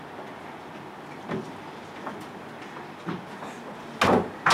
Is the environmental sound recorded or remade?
recorded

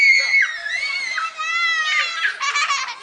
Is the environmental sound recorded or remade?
recorded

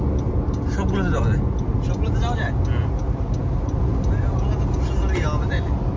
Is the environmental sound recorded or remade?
recorded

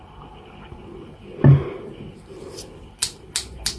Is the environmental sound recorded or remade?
recorded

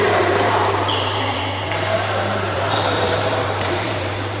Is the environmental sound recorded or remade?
remade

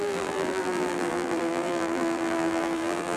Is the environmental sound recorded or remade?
remade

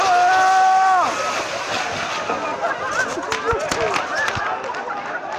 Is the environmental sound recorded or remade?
recorded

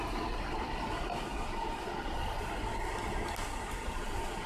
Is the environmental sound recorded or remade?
recorded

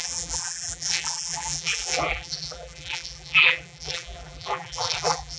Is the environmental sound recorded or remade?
remade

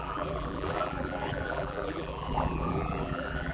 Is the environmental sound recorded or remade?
remade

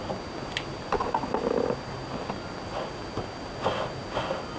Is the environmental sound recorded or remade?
recorded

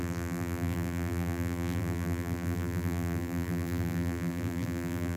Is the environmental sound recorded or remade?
remade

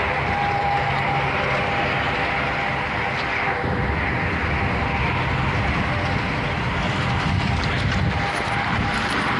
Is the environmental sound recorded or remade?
recorded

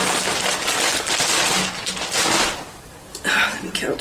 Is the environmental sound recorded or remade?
remade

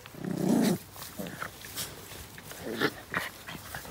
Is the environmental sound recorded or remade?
recorded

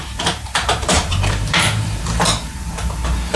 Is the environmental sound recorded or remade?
remade